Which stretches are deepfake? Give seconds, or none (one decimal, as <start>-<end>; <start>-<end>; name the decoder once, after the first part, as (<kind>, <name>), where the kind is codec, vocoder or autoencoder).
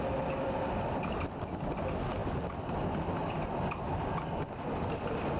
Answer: none